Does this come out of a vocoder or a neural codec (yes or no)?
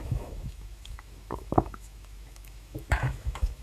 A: yes